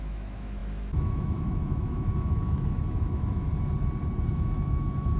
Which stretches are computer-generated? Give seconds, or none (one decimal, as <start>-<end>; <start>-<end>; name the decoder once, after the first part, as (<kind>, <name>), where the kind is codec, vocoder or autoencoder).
0.0-3.5 (autoencoder, DAC-VAE); 4.3-5.2

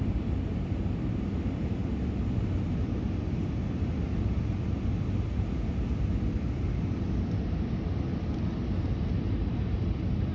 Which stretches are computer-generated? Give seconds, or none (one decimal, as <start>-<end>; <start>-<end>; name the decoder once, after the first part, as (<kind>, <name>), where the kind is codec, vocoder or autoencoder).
none

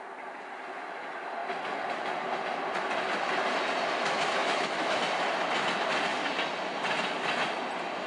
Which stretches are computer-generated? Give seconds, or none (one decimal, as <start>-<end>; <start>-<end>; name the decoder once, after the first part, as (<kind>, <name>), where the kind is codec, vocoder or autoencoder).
4.4-5.0 (autoencoder, DAC-VAE)

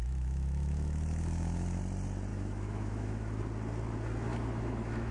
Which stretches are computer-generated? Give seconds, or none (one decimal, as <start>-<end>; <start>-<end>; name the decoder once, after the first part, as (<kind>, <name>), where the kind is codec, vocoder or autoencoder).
0.0-1.8 (autoencoder, DAC-VAE); 2.3-3.4; 4.3-5.1

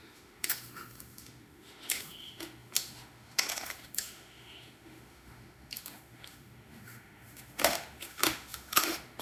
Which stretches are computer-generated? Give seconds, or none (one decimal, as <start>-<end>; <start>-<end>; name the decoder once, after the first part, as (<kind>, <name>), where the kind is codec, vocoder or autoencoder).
0.0-9.2 (autoencoder, DAC-VAE)

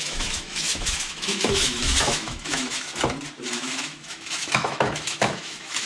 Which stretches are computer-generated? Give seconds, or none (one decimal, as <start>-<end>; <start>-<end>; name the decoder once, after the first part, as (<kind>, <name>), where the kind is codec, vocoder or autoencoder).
0.0-2.9 (autoencoder, DAC-VAE); 3.5-5.9

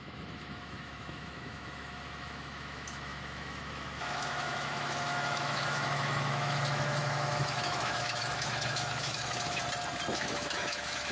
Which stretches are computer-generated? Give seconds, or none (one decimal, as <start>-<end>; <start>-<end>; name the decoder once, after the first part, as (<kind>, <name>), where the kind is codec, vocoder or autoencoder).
0.0-9.6 (autoencoder, DAC-VAE); 10.1-11.1